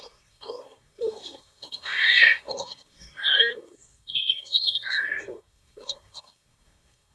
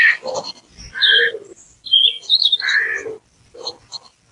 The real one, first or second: second